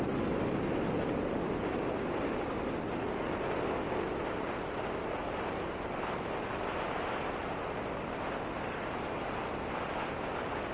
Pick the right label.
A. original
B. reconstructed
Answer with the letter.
A